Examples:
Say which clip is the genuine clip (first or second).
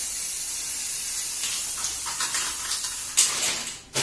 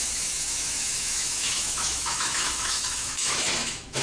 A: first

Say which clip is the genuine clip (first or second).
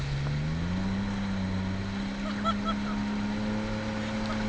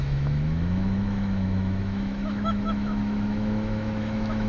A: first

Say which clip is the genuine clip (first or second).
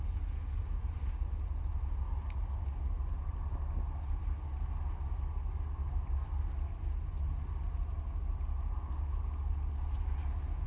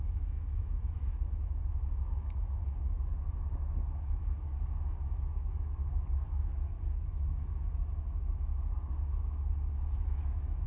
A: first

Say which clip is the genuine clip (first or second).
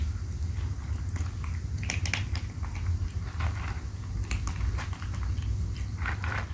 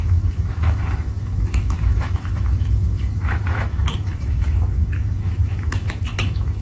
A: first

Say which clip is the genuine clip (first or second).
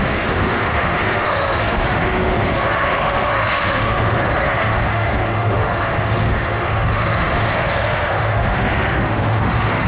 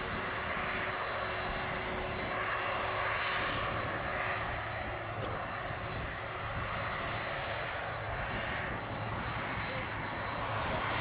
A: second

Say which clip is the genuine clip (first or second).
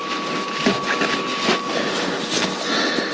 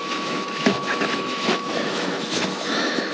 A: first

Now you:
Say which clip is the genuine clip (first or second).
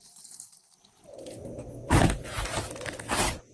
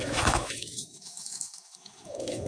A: first